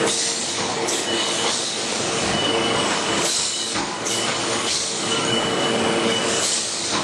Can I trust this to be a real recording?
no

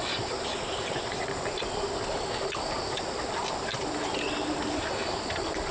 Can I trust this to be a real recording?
yes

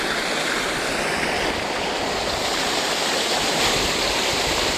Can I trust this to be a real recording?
yes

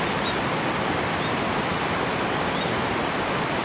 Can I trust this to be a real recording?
yes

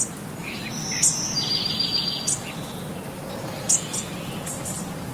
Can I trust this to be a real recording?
yes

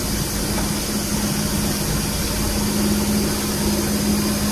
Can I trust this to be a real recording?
yes